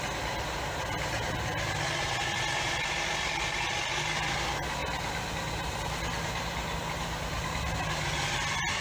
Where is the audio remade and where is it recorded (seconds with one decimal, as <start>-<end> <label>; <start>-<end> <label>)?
0.0-8.8 recorded